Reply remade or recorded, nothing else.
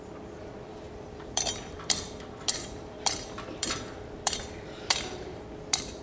remade